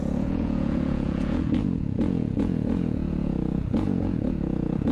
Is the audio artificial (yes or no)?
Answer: yes